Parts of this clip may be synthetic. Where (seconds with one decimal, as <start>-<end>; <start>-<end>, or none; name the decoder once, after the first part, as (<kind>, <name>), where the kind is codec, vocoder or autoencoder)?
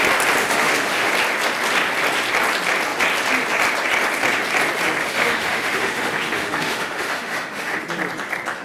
0.4-1.1 (autoencoder, DAC-VAE); 5.0-7.8